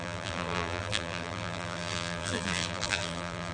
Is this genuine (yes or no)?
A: no